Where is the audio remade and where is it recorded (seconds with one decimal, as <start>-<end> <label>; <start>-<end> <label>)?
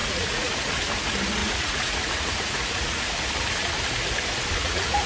0.0-0.8 remade; 0.8-1.4 recorded; 1.4-3.1 remade; 3.1-4.6 recorded; 4.6-5.1 remade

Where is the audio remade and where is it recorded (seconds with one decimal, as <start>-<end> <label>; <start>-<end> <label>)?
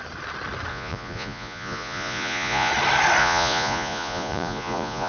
0.0-0.7 recorded; 0.7-2.7 remade; 2.7-3.2 recorded; 3.2-5.1 remade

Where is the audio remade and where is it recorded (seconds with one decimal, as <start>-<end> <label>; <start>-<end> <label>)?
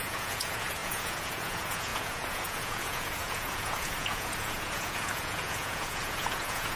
0.0-6.8 remade